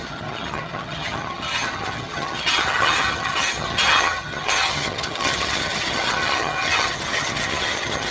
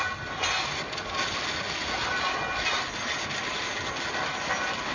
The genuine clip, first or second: second